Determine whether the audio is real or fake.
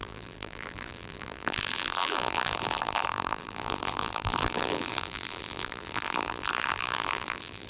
fake